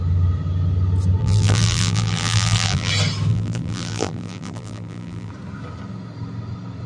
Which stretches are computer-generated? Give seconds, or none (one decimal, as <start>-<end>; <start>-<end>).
1.2-2.9; 3.3-5.3